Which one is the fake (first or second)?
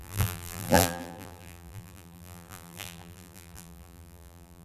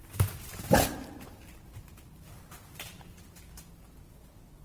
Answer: first